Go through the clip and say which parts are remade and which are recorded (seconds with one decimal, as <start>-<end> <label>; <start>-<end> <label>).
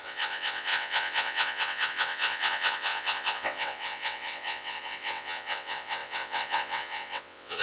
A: 0.0-7.6 remade